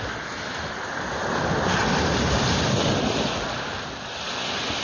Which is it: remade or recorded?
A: recorded